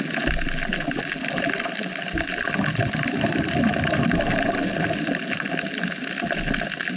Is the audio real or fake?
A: real